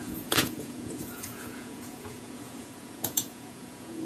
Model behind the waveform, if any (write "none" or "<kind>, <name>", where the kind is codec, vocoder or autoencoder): vocoder, Vocos